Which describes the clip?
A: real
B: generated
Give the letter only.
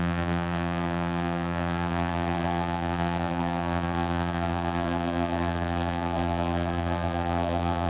B